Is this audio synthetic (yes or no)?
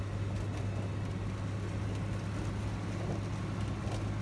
no